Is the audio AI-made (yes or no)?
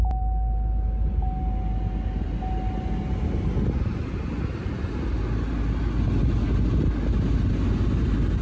no